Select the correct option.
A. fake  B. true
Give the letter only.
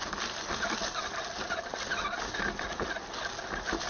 B